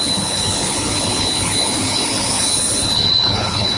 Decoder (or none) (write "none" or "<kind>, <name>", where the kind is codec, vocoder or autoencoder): codec, HILCodec